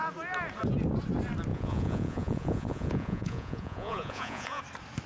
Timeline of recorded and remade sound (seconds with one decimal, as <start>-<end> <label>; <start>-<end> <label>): 0.0-1.5 recorded; 1.5-4.6 remade; 4.6-5.1 recorded